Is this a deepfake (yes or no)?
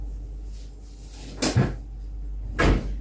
no